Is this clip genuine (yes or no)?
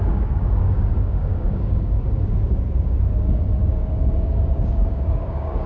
no